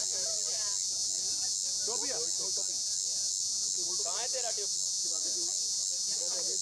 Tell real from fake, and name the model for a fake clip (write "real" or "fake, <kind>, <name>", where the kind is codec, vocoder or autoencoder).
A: real